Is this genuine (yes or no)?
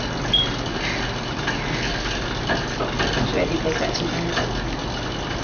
yes